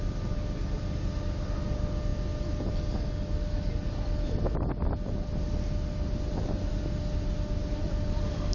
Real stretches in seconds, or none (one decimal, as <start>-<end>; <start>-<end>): 0.0-8.5